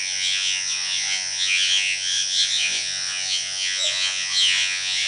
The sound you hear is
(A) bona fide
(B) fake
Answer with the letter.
B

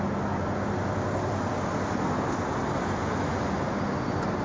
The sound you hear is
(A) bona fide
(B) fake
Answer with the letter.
A